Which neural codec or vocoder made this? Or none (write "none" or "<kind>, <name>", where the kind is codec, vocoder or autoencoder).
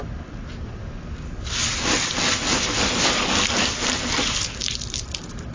none